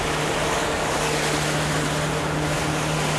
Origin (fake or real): real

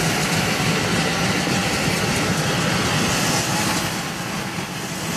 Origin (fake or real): real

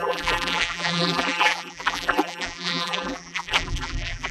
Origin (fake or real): fake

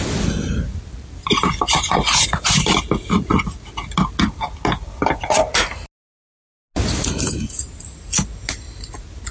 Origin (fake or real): real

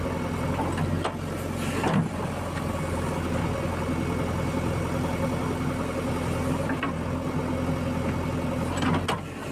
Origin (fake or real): real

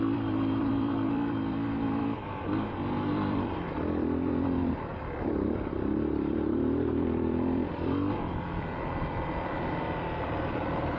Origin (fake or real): fake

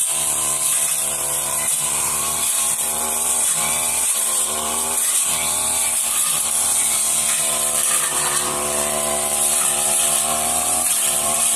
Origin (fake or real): fake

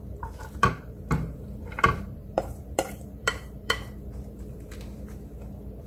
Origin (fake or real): fake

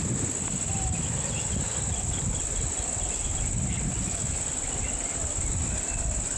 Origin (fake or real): fake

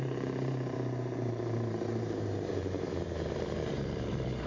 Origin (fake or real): fake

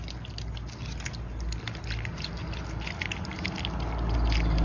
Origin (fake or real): real